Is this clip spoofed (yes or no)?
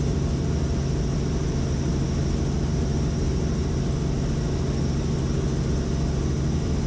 no